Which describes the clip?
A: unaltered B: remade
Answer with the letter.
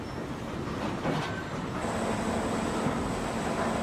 A